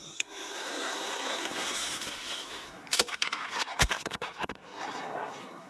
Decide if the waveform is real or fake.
fake